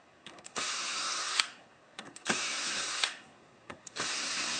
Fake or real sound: fake